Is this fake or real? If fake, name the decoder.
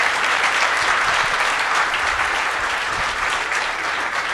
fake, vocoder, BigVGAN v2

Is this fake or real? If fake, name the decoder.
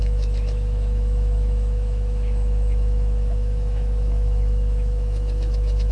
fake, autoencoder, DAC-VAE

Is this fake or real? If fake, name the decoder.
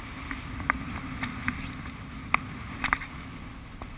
real